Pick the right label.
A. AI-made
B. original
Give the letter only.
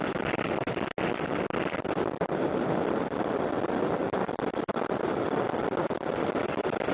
B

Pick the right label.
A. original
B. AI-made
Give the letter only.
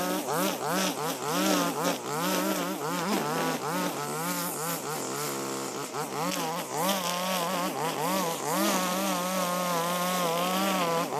A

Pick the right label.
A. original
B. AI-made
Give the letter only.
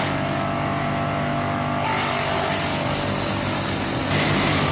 A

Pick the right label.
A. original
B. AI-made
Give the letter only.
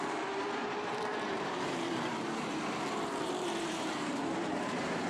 B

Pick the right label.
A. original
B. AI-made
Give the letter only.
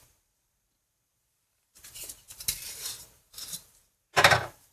B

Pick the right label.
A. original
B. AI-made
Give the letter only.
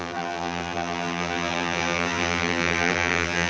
B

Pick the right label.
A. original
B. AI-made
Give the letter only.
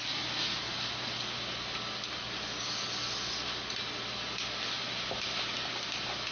A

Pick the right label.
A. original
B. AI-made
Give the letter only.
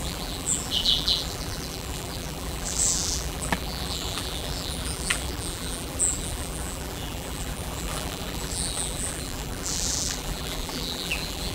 B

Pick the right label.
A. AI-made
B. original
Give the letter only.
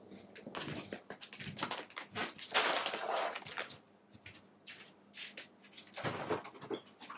B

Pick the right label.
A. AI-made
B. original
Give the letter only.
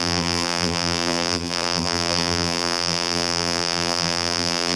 A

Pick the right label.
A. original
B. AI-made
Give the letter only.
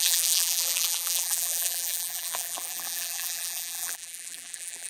B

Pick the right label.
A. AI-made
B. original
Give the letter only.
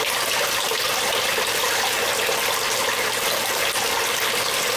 B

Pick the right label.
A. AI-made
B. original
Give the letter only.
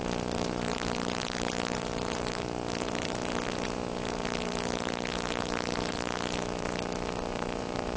A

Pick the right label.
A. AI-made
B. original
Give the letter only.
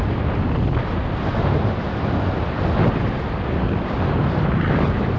B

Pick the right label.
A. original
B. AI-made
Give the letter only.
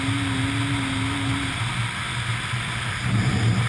A